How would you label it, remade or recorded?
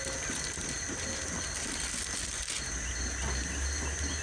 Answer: recorded